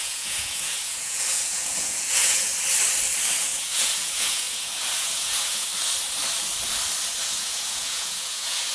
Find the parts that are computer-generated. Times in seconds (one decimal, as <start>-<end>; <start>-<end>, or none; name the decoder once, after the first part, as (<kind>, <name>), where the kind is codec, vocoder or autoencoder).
0.0-2.5 (vocoder, Vocos); 3.3-5.7; 7.2-8.7